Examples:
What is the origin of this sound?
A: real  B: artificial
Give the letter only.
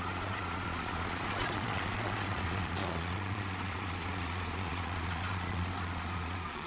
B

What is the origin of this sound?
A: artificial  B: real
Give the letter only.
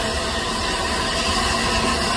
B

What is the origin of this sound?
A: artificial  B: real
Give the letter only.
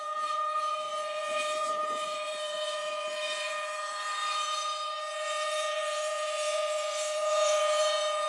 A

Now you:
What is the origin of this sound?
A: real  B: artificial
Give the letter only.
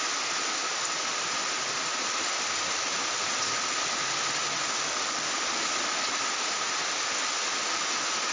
A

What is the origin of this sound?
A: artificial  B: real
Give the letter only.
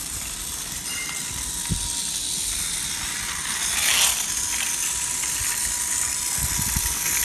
B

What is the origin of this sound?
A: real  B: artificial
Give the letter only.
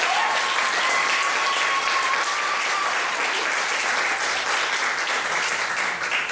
A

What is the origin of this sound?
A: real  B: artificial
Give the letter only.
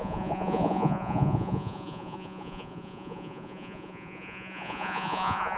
B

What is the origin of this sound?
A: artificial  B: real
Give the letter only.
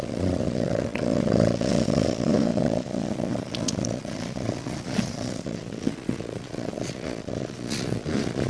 A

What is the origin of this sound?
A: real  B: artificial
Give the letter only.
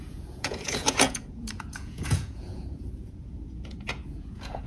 B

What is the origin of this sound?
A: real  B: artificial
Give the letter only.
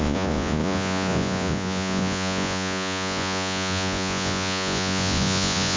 B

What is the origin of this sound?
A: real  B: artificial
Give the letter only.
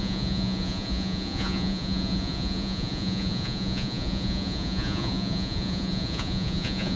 B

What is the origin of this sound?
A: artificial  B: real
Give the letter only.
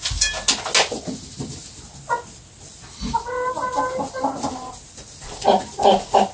B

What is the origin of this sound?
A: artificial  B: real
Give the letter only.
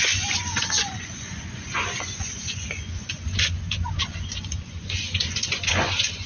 A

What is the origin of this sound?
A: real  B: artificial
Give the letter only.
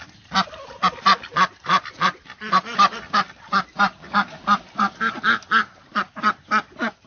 A